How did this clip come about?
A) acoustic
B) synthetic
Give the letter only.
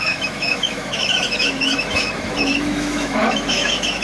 B